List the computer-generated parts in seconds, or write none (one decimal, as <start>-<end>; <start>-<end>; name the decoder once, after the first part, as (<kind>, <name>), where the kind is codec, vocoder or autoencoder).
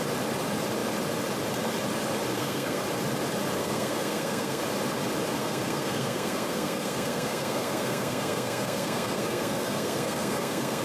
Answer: 2.3-2.8 (codec, SNAC); 3.6-4.6; 5.4-10.8